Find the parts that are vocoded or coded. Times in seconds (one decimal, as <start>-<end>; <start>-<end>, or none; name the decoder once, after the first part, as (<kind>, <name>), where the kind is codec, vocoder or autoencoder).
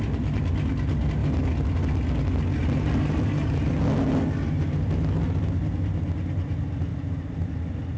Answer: 2.6-3.7 (vocoder, BigVGAN v2); 6.9-7.5